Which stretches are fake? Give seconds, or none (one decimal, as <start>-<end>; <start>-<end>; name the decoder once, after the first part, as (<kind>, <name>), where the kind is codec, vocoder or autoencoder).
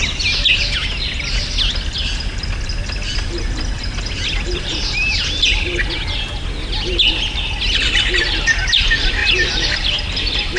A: none